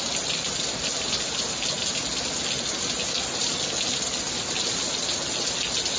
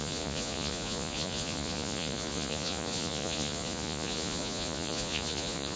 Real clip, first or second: first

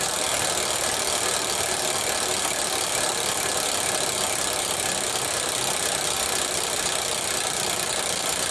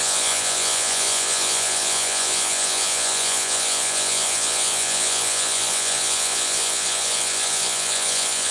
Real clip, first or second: first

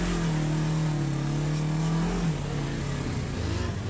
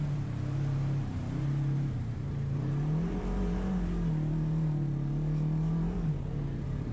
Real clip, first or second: first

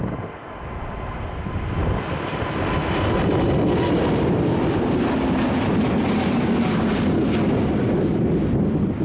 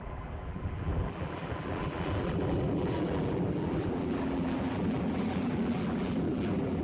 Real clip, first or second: first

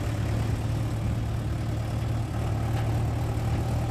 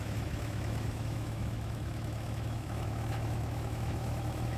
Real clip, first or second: first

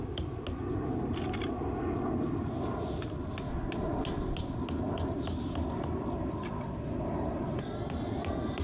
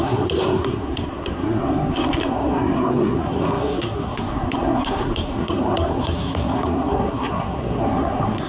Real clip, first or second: first